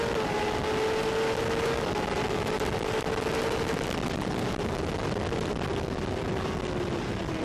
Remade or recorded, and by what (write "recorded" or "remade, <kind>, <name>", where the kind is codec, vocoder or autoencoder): recorded